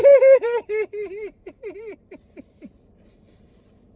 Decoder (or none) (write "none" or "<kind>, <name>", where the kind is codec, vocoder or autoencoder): vocoder, BigVGAN v2